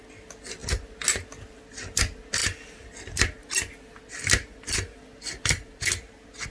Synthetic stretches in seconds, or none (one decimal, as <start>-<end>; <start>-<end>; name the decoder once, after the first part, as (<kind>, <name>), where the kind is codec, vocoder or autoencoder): none